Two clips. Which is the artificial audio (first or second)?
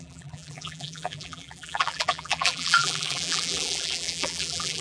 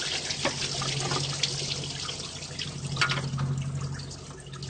first